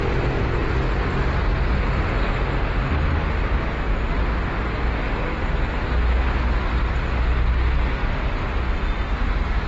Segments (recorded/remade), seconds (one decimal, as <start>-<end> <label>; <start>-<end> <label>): 0.0-9.7 recorded